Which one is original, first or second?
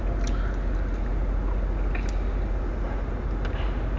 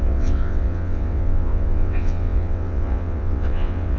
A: first